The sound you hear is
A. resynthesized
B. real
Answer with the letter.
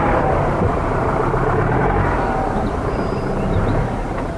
A